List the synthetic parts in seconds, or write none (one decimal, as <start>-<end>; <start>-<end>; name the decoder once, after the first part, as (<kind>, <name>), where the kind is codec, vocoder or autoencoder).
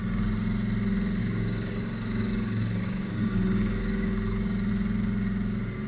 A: 1.2-4.7 (codec, DAC)